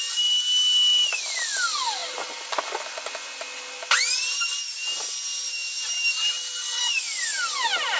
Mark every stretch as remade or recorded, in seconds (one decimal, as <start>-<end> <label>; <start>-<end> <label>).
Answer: 0.0-8.0 recorded

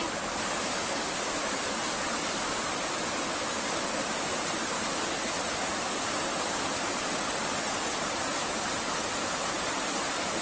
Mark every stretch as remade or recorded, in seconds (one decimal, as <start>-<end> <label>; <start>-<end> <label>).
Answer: 0.0-10.4 recorded

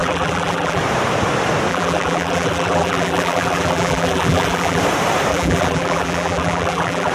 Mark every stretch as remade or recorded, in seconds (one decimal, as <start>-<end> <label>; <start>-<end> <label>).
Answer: 0.0-0.8 remade; 0.8-1.7 recorded; 1.7-4.8 remade; 4.8-5.3 recorded; 5.3-7.1 remade

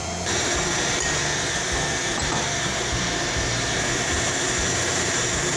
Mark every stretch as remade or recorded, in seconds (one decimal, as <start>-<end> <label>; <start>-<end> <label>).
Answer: 0.0-1.2 remade; 1.2-2.0 recorded; 2.0-5.6 remade

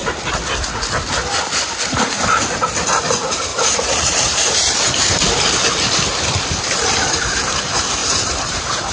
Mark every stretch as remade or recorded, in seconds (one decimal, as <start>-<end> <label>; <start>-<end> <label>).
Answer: 0.0-3.5 recorded; 3.5-4.7 remade; 4.7-8.0 recorded; 8.0-8.9 remade